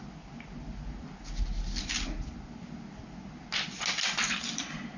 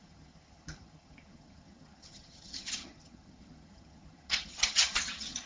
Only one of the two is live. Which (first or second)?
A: first